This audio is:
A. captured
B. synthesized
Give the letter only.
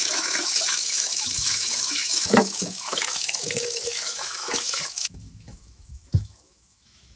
B